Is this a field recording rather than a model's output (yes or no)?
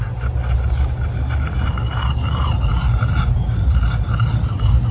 yes